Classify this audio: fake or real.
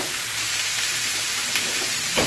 real